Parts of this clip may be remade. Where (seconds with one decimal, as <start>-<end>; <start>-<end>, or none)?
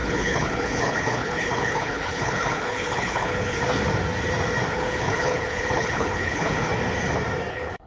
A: 0.0-3.6; 4.7-6.7; 7.5-7.9